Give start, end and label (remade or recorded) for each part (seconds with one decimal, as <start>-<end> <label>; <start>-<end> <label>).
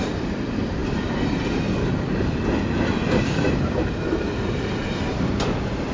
0.0-0.8 remade; 0.8-3.1 recorded; 3.1-5.9 remade